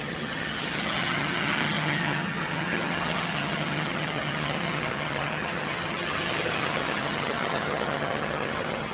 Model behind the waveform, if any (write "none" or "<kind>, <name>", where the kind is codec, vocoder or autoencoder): vocoder, HiFi-GAN